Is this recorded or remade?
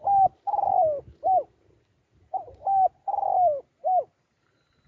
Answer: recorded